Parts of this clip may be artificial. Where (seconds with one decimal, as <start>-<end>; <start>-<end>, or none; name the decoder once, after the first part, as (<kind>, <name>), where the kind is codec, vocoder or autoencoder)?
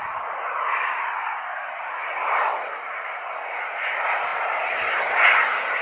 2.0-2.6 (vocoder, BigVGAN v2)